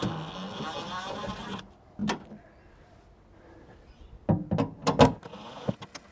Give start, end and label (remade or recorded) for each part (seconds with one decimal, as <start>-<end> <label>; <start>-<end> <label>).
0.0-6.1 recorded

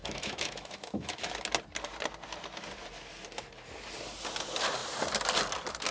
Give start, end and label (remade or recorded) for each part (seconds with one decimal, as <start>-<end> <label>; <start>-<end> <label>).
0.0-1.3 remade; 1.3-5.9 recorded

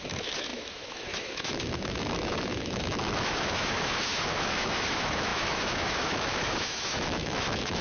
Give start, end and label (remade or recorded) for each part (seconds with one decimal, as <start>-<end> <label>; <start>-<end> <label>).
0.0-7.8 remade

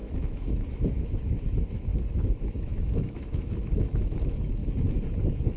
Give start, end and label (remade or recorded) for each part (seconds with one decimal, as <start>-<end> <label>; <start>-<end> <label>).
0.0-1.9 remade; 1.9-2.4 recorded; 2.4-4.6 remade; 4.6-5.6 recorded

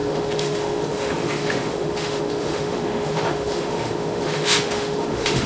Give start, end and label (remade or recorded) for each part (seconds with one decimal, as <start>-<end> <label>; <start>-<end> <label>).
0.0-5.5 remade

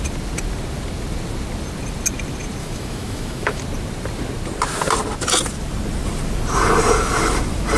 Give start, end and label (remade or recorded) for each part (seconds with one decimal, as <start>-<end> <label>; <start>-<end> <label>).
0.0-2.6 recorded; 2.6-3.6 remade; 3.6-7.8 recorded